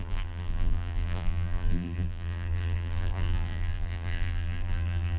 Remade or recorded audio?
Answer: remade